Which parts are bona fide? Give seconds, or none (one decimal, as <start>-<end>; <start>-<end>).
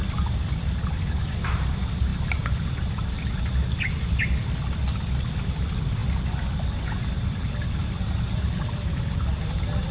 0.0-9.9